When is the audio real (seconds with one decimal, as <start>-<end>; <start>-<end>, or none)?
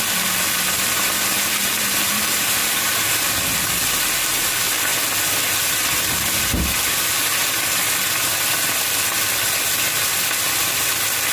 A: 0.0-1.6; 3.2-11.3